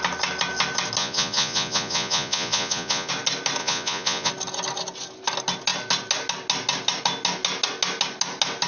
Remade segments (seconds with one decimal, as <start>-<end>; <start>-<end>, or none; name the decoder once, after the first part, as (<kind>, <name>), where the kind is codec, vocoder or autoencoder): 1.0-3.1 (vocoder, Vocos); 3.6-4.3